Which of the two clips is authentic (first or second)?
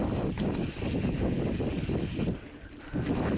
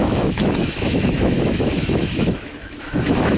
first